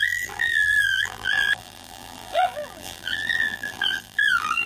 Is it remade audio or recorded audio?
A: remade